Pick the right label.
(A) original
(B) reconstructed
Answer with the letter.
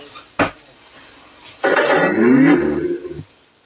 A